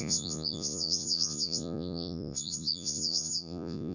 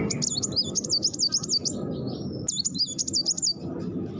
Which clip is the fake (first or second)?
first